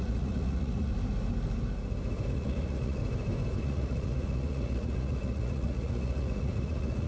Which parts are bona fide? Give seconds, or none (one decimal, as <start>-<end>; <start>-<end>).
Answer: 0.9-2.3; 3.0-3.6